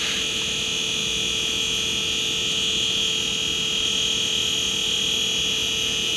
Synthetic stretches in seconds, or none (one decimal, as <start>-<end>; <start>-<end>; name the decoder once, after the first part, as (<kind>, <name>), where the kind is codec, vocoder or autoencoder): none

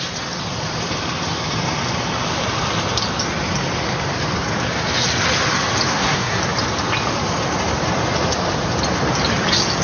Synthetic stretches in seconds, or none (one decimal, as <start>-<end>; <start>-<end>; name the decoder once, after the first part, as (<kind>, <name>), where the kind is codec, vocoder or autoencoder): 5.9-6.4 (codec, SNAC)

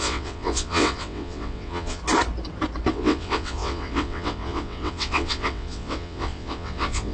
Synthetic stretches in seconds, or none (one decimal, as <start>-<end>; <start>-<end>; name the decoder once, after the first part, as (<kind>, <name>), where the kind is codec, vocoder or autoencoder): 0.0-2.0 (vocoder, WaveNeXt); 2.9-7.1

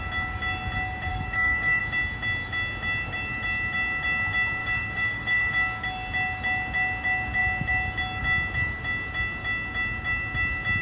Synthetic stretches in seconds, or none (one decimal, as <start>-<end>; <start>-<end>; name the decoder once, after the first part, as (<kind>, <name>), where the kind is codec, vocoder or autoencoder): 1.1-1.8 (codec, DAC); 4.6-5.5

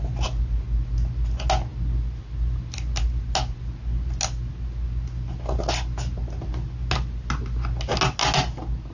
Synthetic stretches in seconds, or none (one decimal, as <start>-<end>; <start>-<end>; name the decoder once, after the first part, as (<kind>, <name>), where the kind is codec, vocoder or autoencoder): none

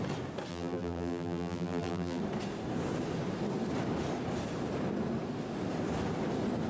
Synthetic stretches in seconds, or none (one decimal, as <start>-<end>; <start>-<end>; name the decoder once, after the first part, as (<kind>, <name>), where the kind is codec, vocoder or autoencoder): 0.5-2.2 (vocoder, BigVGAN v2)

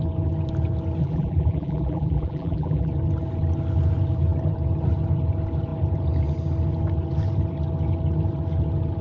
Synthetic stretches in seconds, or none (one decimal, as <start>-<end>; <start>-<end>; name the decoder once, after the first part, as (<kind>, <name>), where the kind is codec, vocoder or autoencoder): 1.0-2.9 (vocoder, BigVGAN v2)